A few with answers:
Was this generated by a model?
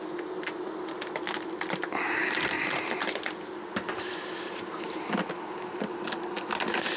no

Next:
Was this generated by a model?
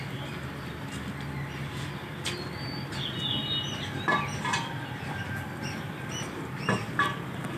no